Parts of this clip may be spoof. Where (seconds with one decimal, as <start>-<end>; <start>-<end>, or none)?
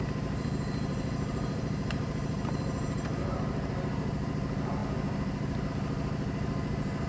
0.9-3.9